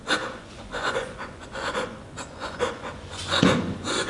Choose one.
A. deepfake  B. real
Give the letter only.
A